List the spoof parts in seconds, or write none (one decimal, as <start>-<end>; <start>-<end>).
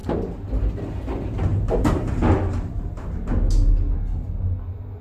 1.5-3.3